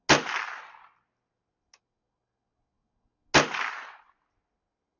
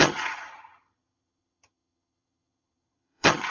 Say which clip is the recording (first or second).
first